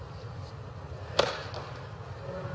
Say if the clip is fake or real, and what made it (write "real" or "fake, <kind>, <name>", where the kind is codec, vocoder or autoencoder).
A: real